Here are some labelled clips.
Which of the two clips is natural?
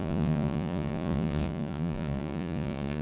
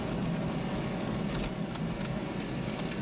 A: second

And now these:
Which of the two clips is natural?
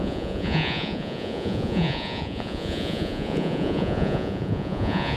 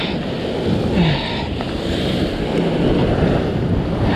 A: second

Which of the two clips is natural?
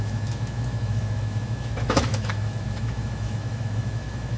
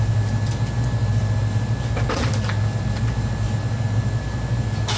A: second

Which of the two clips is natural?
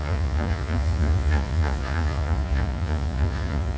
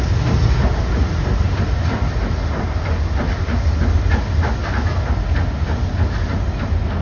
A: second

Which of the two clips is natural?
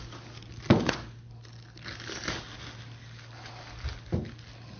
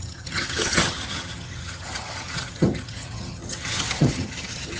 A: first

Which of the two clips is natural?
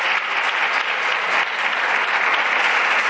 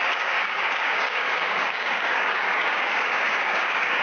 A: first